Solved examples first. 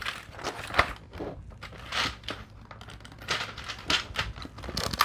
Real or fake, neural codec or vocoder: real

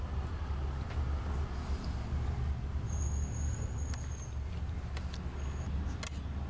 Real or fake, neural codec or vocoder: real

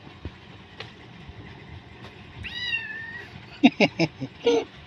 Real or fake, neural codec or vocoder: fake, vocoder, Vocos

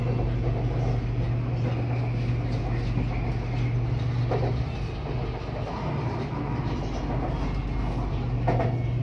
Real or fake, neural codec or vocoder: real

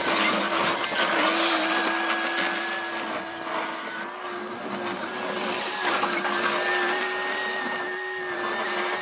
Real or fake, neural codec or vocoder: real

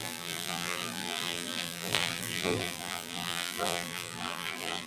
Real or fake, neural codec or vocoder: fake, vocoder, BigVGAN v2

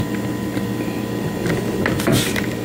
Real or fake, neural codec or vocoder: real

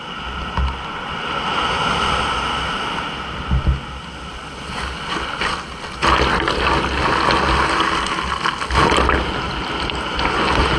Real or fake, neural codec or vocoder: real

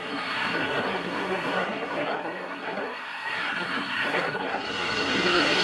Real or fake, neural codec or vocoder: fake, codec, SNAC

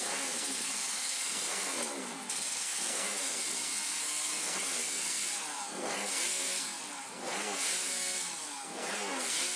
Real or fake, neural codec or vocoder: fake, codec, SNAC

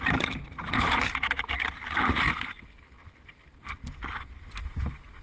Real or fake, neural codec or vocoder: real